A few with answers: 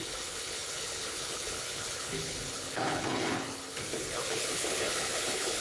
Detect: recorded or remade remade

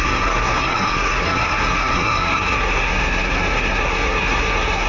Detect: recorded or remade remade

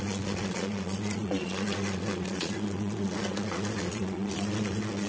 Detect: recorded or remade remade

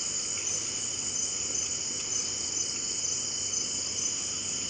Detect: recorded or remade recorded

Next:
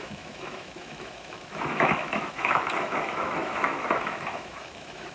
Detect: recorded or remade remade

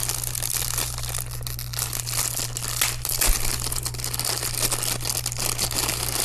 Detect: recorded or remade recorded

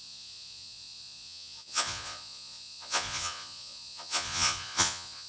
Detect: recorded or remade remade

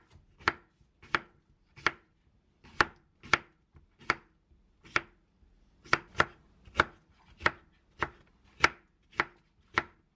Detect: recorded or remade recorded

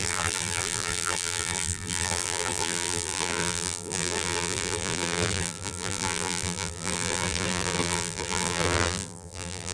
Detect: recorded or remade remade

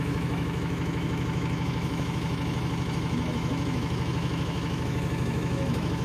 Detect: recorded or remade remade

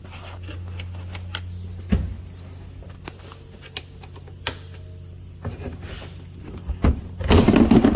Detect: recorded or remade recorded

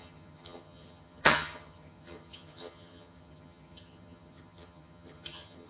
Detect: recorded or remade remade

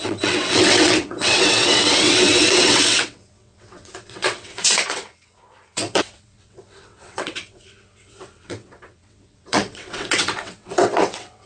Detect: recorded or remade remade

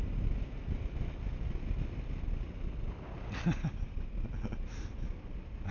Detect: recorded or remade recorded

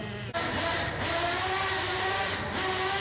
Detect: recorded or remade recorded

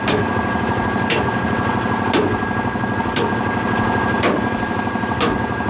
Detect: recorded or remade recorded